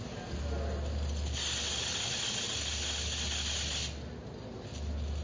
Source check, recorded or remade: recorded